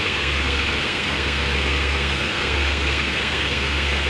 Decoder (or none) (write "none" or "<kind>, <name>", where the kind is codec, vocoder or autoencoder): codec, SNAC